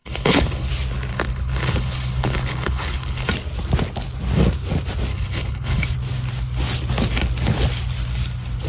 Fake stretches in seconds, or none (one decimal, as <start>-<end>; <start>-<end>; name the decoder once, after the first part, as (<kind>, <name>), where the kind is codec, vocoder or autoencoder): 0.0-0.7 (codec, HILCodec); 1.1-3.3; 5.1-5.9